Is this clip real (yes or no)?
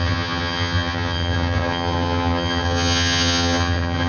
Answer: no